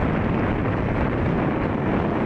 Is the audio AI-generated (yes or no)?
no